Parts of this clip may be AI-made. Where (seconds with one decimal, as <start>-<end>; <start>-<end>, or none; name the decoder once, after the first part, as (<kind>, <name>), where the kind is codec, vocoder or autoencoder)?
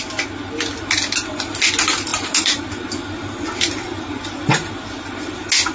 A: none